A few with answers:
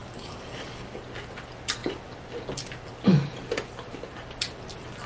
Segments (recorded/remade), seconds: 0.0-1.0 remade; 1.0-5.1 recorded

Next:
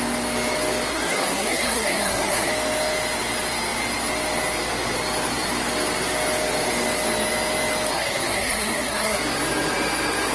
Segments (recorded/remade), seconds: 0.0-0.9 recorded; 0.9-2.5 remade; 2.5-7.9 recorded; 7.9-9.2 remade; 9.2-10.3 recorded